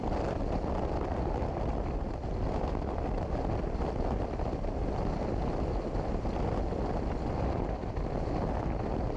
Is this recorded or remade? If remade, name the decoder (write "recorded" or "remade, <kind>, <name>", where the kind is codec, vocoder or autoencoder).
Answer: recorded